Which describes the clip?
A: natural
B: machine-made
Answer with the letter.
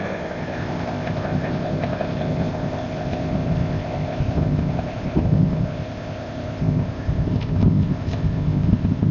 B